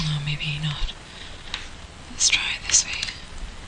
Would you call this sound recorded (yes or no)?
yes